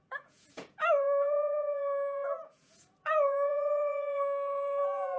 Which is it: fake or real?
fake